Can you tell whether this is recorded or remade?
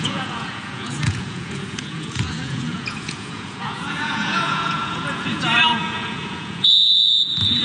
remade